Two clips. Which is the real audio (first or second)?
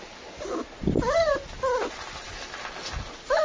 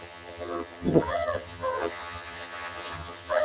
first